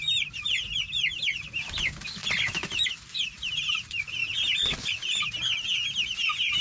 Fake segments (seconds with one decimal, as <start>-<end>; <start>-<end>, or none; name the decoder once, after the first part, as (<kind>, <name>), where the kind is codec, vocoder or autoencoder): 2.2-3.5 (vocoder, BigVGAN v2)